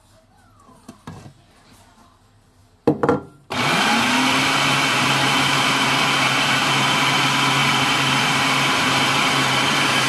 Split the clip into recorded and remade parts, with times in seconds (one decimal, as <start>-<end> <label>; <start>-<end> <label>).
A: 0.0-4.9 recorded; 4.9-6.7 remade; 6.7-7.6 recorded; 7.6-10.1 remade